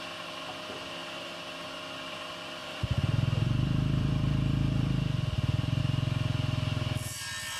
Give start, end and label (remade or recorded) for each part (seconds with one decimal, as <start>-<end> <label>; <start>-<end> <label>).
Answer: 0.0-2.6 recorded; 2.6-5.8 remade; 5.8-7.6 recorded